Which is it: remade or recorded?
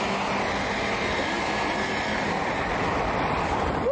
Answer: recorded